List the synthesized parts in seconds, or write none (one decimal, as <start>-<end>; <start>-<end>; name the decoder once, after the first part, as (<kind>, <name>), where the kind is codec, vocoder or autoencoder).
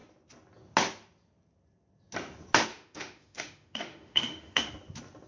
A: 2.7-4.6 (autoencoder, DAC-VAE)